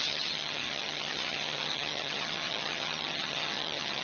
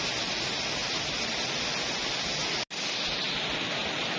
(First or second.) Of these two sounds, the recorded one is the second